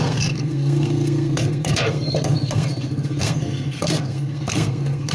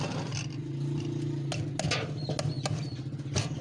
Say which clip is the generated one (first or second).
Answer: first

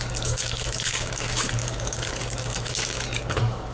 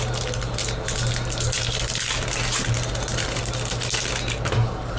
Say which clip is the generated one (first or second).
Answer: first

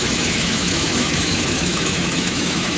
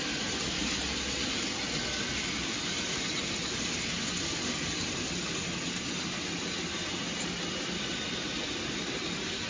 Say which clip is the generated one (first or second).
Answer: first